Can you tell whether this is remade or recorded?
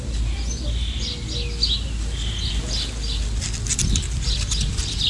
recorded